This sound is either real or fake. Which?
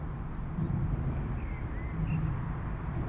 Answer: real